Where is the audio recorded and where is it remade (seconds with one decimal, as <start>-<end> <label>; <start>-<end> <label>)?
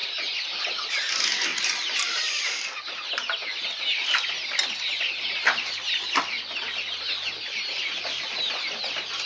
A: 0.0-1.5 recorded; 1.5-3.1 remade; 3.1-7.7 recorded; 7.7-8.6 remade; 8.6-9.3 recorded